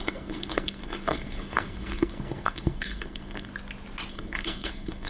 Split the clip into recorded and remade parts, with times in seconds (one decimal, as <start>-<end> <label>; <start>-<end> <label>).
0.0-3.5 remade; 3.5-4.1 recorded; 4.1-5.1 remade